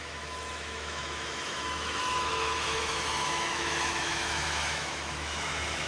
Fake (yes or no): yes